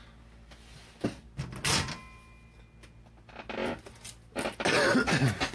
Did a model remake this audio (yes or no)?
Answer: no